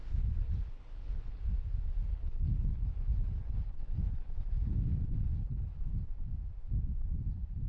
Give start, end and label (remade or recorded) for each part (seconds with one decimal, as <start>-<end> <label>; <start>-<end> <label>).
0.0-1.4 remade; 1.4-2.1 recorded; 2.1-5.0 remade; 5.0-5.4 recorded; 5.4-5.9 remade; 5.9-7.7 recorded